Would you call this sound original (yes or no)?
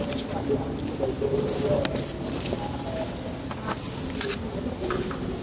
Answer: yes